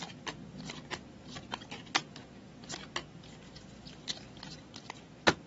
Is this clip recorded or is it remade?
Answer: recorded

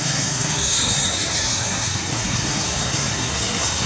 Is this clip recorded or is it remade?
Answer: remade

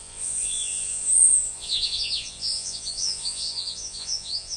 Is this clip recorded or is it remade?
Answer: remade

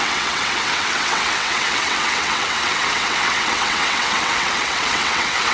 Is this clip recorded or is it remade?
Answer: remade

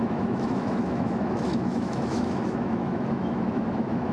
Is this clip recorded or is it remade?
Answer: remade